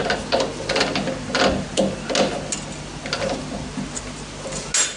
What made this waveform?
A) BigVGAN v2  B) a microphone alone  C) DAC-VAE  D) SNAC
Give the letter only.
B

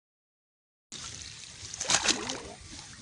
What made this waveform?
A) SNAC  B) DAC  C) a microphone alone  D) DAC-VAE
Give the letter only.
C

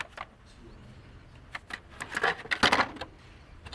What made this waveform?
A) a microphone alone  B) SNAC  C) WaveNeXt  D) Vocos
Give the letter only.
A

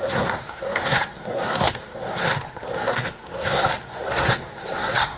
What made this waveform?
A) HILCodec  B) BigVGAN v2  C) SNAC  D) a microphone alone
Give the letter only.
C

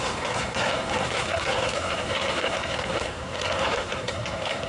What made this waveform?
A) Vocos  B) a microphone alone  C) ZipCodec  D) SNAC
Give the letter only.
D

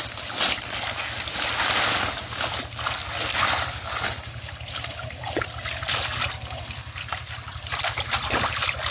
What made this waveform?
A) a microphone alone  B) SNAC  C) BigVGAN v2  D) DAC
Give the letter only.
A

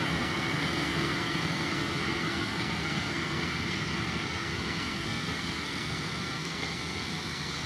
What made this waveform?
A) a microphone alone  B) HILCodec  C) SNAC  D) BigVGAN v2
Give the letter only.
C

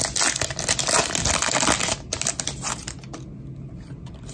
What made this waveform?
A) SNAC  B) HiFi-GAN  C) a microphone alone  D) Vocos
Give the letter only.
C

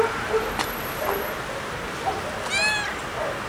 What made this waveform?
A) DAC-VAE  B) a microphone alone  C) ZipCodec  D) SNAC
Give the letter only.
B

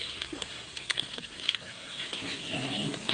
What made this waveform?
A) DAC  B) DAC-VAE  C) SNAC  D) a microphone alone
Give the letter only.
C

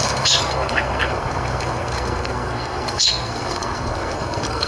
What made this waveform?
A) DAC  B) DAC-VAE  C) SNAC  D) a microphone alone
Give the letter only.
C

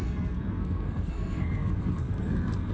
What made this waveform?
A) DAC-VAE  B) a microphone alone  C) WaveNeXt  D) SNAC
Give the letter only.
D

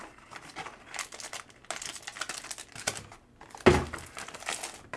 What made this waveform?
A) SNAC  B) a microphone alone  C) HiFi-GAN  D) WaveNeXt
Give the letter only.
B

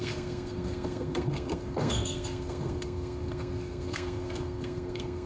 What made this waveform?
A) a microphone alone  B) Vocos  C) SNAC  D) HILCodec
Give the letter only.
C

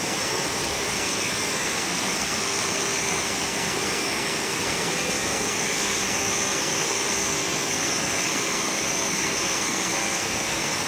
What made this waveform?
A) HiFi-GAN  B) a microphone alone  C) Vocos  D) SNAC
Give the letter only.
D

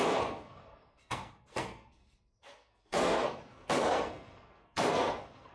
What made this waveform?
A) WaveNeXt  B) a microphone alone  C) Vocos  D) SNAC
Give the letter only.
D